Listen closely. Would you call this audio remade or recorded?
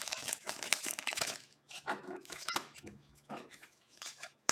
remade